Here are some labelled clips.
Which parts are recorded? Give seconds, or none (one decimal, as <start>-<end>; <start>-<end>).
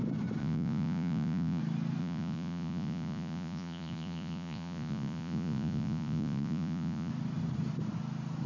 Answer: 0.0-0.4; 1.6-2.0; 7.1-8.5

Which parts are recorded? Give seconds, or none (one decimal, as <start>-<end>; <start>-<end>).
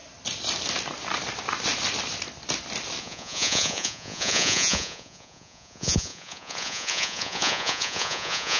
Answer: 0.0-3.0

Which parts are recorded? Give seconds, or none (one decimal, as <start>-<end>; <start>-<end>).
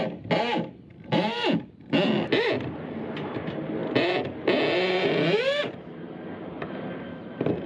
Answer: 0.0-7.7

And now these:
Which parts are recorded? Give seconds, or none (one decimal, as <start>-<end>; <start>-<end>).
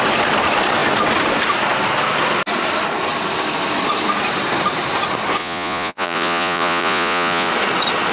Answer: 0.0-5.4; 7.5-8.1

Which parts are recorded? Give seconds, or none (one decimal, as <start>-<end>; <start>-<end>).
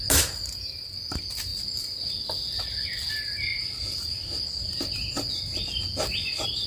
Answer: 0.0-6.7